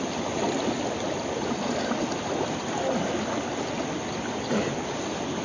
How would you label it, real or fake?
real